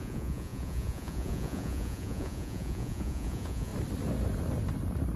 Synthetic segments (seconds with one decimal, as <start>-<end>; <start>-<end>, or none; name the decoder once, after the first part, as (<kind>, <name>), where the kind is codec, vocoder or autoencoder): 0.0-3.7 (vocoder, Vocos)